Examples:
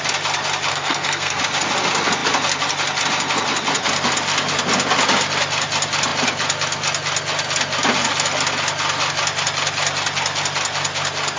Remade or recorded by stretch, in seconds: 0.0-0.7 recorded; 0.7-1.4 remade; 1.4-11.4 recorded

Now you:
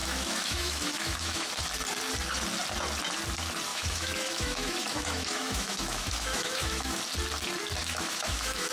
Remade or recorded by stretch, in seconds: 0.0-1.5 remade; 1.5-3.7 recorded; 3.7-7.0 remade; 7.0-7.8 recorded; 7.8-8.7 remade

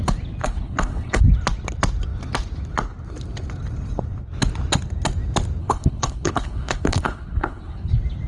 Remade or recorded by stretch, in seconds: 0.0-0.4 recorded; 0.4-1.2 remade; 1.2-5.6 recorded; 5.6-7.9 remade; 7.9-8.3 recorded

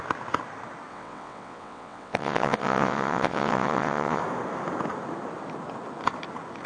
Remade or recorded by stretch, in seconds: 0.0-0.9 recorded; 0.9-4.2 remade; 4.2-6.7 recorded

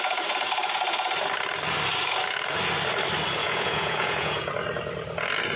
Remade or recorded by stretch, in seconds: 0.0-3.4 recorded; 3.4-4.5 remade; 4.5-5.6 recorded

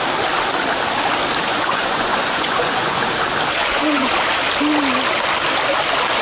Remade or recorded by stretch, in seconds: 0.0-1.5 recorded; 1.5-3.0 remade; 3.0-3.6 recorded; 3.6-4.1 remade; 4.1-6.2 recorded